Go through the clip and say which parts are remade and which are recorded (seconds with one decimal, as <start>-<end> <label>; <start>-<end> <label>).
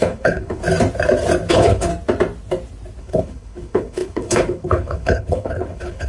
0.0-0.6 remade; 0.6-1.5 recorded; 1.5-1.9 remade; 1.9-3.0 recorded; 3.0-6.1 remade